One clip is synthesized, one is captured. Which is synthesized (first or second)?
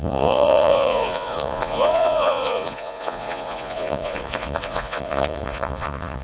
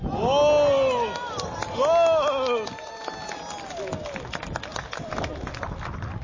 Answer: first